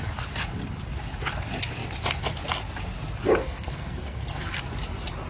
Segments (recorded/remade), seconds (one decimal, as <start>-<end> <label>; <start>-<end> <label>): 0.0-3.4 recorded; 3.4-4.6 remade; 4.6-5.3 recorded